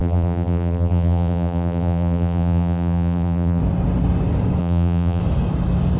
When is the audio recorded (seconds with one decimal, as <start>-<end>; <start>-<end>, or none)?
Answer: 3.6-4.6; 5.2-6.0